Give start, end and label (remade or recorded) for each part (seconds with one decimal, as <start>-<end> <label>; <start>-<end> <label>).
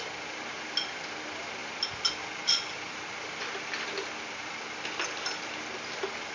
0.0-6.3 recorded